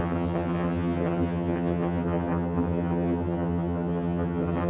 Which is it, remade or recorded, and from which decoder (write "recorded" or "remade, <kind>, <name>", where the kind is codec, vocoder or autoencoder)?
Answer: remade, vocoder, HiFi-GAN